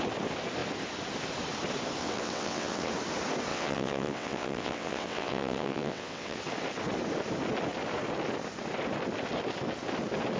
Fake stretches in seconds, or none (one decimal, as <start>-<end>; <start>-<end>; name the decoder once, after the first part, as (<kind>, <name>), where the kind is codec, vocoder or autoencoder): 2.0-2.9 (vocoder, WaveNeXt); 3.5-6.4